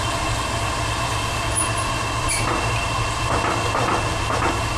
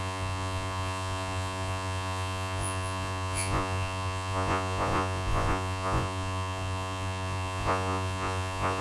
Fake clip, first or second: second